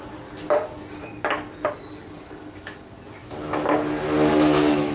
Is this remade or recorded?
recorded